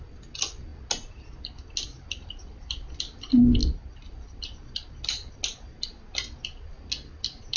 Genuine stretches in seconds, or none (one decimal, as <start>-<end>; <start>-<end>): 0.0-7.6